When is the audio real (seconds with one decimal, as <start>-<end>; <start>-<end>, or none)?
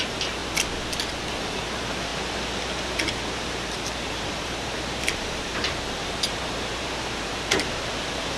0.4-1.3; 2.1-3.5